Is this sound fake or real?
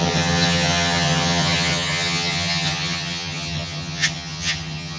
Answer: fake